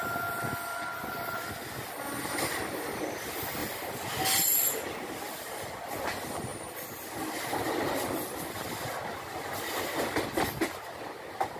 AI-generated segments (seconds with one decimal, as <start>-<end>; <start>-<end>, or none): none